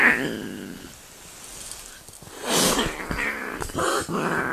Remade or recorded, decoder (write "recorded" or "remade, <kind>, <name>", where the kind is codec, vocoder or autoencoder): recorded